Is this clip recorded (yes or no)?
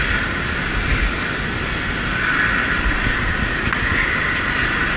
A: yes